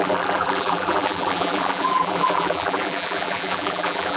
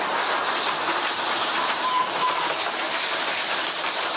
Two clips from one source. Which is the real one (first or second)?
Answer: second